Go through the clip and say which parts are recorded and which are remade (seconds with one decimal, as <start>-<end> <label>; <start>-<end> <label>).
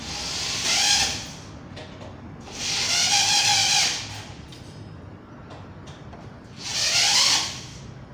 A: 0.0-8.1 recorded